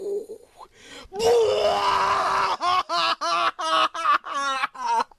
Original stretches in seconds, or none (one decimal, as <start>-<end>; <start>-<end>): 0.0-5.2